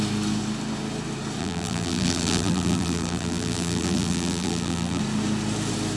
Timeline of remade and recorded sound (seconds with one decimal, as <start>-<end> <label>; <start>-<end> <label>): 0.0-1.4 recorded; 1.4-5.0 remade; 5.0-6.0 recorded